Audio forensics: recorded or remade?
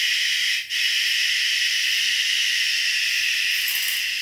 recorded